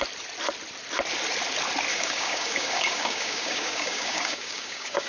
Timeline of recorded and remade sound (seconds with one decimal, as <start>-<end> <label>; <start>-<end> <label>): 0.0-1.9 recorded; 1.9-5.1 remade